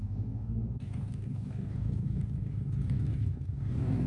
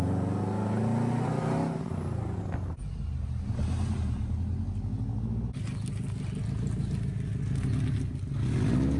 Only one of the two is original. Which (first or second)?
second